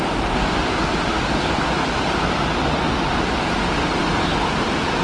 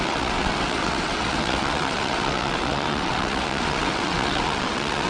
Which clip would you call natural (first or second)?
first